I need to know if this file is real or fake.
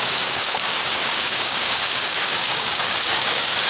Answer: fake